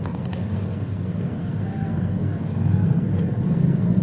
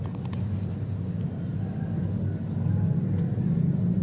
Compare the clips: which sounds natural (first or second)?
second